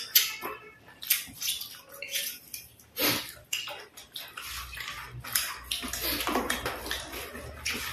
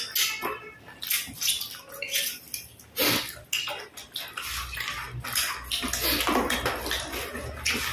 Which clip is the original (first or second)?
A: second